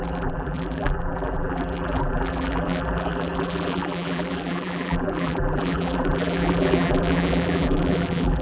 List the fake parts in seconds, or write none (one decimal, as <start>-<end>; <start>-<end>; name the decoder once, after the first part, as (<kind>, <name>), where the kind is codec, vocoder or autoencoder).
0.0-8.4 (vocoder, BigVGAN v2)